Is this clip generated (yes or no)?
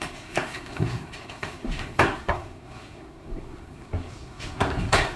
yes